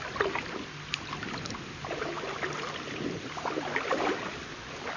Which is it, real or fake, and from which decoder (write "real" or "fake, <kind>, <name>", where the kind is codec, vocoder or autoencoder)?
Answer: real